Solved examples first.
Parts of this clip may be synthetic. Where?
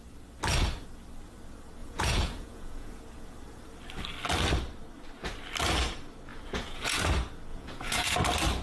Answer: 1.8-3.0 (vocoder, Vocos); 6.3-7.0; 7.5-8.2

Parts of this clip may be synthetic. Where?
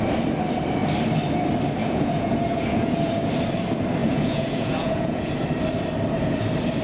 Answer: 1.8-3.1 (vocoder, Vocos); 4.0-5.3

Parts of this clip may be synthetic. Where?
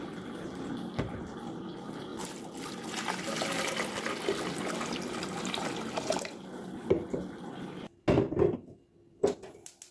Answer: none